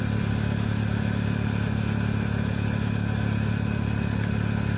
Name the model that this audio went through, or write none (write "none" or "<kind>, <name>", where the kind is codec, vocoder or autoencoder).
none